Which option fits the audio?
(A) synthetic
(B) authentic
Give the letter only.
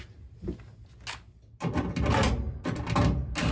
B